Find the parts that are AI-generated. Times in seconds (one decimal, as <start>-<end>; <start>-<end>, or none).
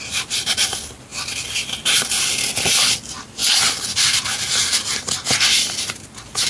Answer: none